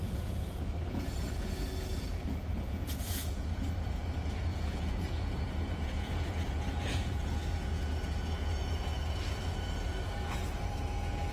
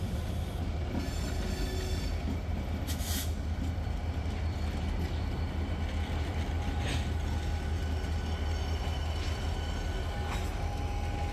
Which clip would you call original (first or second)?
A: second